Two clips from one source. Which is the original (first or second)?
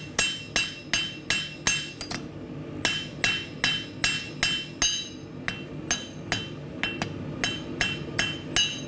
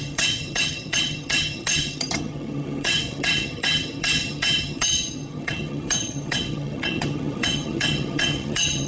first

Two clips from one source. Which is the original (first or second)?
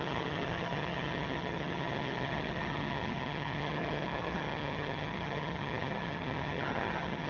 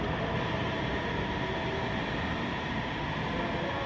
second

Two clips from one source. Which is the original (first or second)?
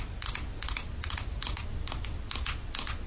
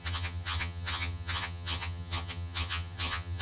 first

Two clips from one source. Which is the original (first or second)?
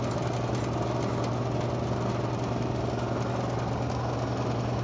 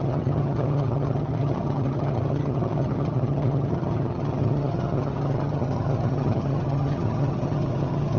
first